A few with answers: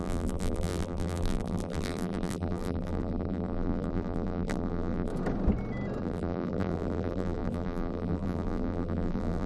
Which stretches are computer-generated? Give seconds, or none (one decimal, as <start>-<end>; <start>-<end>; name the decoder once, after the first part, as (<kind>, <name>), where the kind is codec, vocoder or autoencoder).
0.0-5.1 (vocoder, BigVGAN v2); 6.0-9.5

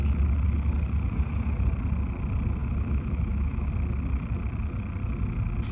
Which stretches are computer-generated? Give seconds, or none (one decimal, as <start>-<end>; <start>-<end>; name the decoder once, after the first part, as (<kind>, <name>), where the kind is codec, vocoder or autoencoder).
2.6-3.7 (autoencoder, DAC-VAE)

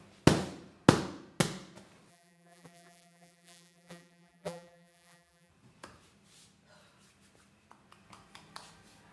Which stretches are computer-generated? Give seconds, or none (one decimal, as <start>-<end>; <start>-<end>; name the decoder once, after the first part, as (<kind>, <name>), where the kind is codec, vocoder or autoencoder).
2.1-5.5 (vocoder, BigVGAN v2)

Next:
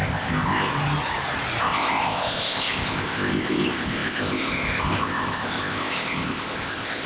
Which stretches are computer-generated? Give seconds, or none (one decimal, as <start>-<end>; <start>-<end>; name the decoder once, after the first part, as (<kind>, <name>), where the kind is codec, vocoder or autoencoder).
0.0-0.7 (codec, ZipCodec); 1.6-7.1

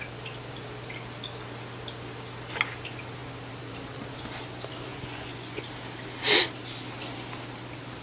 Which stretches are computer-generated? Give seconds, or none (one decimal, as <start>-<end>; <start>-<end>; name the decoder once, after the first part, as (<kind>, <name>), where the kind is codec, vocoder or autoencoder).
4.9-5.6 (vocoder, Vocos)

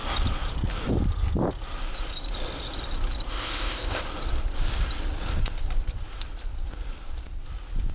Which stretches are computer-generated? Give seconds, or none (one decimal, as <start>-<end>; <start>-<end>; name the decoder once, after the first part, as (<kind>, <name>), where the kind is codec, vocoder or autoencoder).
3.3-4.0 (codec, ZipCodec)

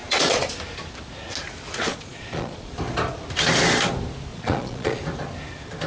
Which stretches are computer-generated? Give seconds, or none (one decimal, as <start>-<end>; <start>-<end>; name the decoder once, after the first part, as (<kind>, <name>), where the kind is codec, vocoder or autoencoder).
0.0-0.5 (vocoder, Vocos); 1.9-2.7; 4.3-5.0